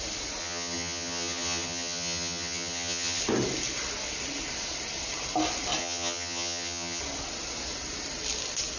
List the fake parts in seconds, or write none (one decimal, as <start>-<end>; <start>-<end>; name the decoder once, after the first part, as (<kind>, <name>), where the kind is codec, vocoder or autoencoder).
0.4-3.2 (vocoder, HiFi-GAN); 5.8-7.0